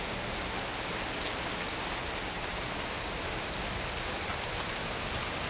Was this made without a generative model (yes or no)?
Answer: yes